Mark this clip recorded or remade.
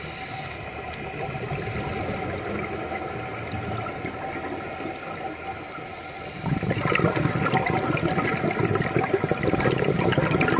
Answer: recorded